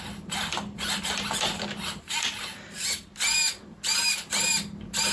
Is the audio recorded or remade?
recorded